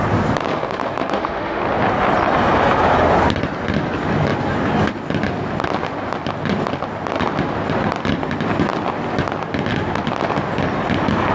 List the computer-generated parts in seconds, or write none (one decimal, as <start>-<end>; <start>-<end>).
0.5-1.6